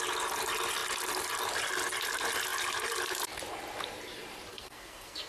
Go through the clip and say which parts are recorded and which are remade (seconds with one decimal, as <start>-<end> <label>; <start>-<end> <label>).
0.0-4.5 recorded; 4.5-5.3 remade